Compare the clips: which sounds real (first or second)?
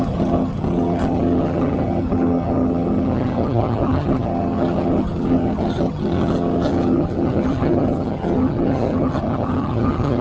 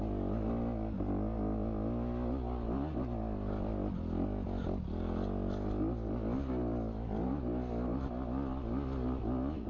second